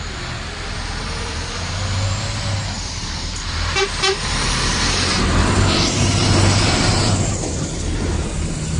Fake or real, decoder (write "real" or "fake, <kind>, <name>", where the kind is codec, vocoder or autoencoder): fake, vocoder, BigVGAN v2